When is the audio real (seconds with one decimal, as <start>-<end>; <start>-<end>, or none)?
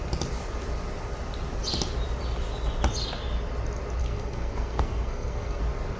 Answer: 0.0-4.0; 5.6-6.0